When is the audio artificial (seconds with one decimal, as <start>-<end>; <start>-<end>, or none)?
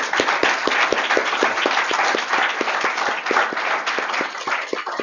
none